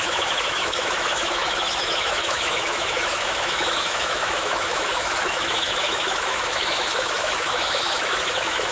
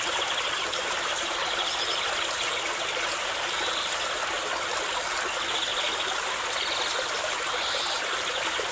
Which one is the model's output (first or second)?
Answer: first